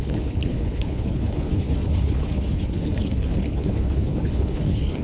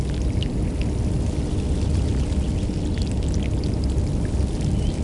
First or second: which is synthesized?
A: first